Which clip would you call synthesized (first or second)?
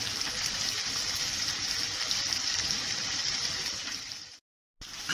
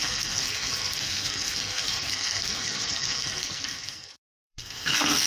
second